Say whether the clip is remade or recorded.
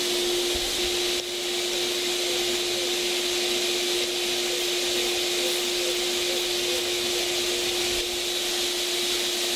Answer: recorded